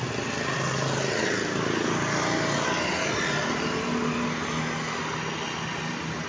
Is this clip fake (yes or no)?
no